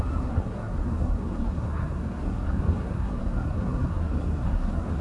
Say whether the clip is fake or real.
fake